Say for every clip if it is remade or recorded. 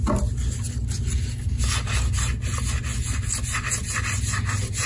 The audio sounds recorded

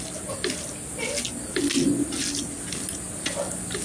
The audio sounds recorded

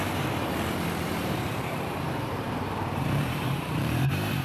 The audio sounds remade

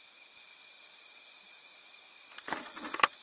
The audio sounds recorded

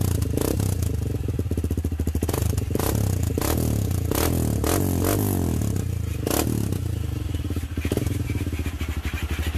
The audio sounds recorded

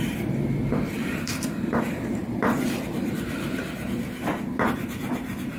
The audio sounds remade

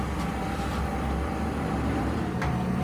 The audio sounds remade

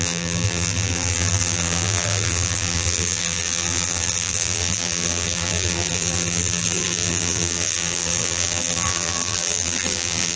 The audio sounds remade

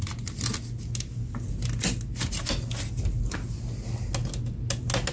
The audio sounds recorded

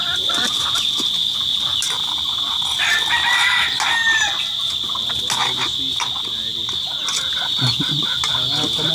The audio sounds recorded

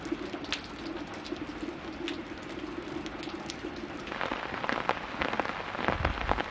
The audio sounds recorded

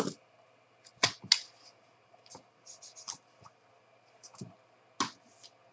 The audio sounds recorded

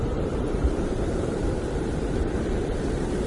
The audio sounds remade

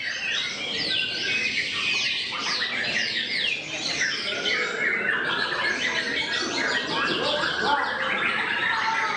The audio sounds recorded